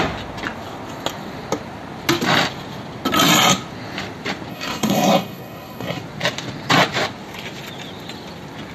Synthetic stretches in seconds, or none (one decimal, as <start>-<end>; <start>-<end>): 4.5-6.0